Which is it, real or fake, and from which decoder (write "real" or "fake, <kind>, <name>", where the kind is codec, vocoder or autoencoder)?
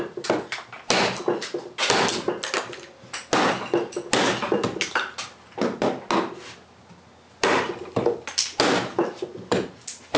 real